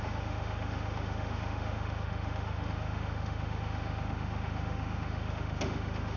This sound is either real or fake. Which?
fake